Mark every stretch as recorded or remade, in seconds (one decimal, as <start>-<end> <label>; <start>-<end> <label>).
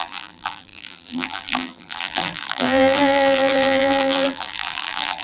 0.0-5.2 remade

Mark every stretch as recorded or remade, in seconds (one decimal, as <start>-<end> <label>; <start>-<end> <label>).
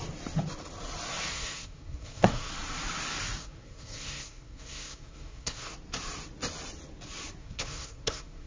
0.0-1.3 recorded; 1.3-2.5 remade; 2.5-3.4 recorded; 3.4-5.7 remade; 5.7-7.4 recorded; 7.4-8.5 remade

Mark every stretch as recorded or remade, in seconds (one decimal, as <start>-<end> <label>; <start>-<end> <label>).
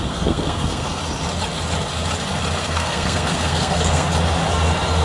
0.0-1.0 remade; 1.0-2.6 recorded; 2.6-4.1 remade; 4.1-5.0 recorded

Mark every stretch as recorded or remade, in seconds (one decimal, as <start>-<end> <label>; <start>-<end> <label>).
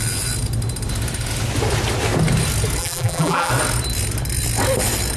0.0-2.8 recorded; 2.8-3.5 remade; 3.5-5.2 recorded